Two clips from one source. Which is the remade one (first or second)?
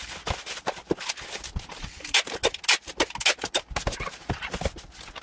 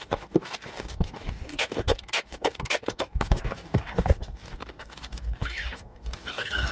second